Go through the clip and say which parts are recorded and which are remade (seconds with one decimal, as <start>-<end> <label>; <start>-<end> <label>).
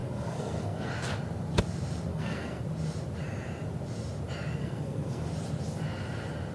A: 0.0-0.9 remade; 0.9-2.1 recorded; 2.1-2.6 remade; 2.6-4.6 recorded; 4.6-5.3 remade; 5.3-6.5 recorded